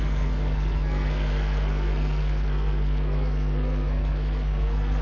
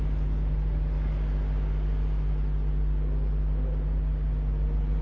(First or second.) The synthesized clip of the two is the first